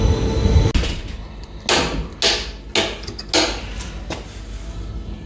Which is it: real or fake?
real